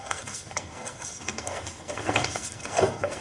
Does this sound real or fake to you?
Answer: fake